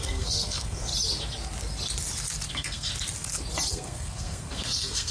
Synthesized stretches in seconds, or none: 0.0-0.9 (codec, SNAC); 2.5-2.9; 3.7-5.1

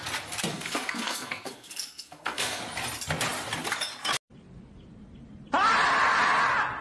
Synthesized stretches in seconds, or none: 0.5-2.6 (codec, SNAC)

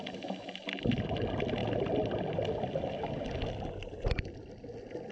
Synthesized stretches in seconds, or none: none

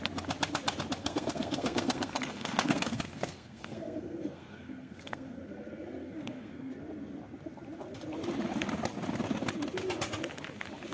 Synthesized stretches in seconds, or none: 1.0-5.4 (codec, SNAC); 6.0-6.7

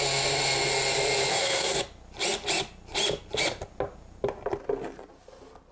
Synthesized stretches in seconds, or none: 1.3-1.8 (codec, SNAC)